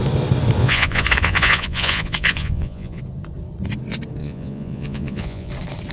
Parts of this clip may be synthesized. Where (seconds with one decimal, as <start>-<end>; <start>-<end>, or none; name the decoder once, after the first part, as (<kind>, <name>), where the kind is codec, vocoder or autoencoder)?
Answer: 0.6-3.0 (vocoder, Vocos); 4.2-5.5

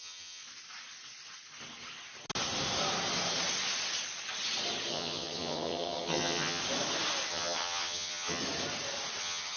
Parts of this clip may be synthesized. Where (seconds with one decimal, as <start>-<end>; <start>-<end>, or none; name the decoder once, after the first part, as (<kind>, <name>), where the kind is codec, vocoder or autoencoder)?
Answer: 0.0-0.4 (vocoder, HiFi-GAN); 4.9-6.6; 7.3-8.4; 9.2-9.6

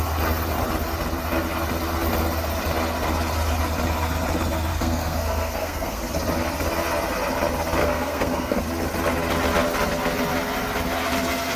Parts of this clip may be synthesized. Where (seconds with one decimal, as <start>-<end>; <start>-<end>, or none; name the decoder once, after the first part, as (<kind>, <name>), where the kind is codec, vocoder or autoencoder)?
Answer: 4.7-6.0 (codec, SNAC); 7.8-8.6

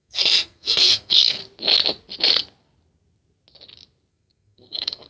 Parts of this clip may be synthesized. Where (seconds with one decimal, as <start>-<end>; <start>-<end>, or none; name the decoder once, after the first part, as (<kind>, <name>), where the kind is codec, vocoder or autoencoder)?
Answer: 0.0-1.4 (codec, SNAC); 4.1-5.1

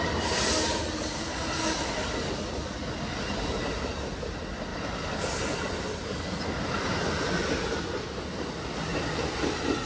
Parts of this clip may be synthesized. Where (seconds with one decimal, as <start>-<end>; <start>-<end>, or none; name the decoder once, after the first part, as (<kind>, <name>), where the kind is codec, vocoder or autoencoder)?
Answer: none

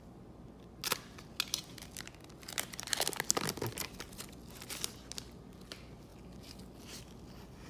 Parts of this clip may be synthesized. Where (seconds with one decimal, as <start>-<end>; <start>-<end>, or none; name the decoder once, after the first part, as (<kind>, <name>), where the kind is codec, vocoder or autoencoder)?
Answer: none

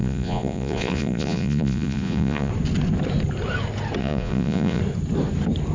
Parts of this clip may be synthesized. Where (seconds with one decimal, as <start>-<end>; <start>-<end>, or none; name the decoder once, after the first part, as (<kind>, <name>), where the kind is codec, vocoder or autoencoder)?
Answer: 0.0-2.5 (vocoder, Vocos); 4.0-4.8

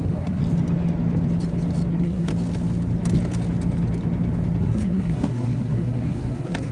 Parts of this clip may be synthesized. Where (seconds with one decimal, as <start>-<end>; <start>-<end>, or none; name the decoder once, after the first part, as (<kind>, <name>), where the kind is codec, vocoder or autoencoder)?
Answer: 0.0-0.4 (codec, SNAC); 1.9-2.3; 4.6-6.7